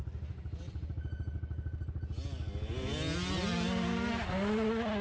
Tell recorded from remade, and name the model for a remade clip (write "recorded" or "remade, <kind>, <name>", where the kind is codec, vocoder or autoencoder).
recorded